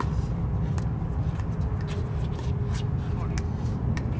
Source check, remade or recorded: recorded